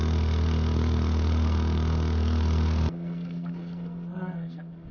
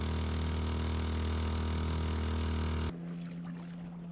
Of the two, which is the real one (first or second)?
second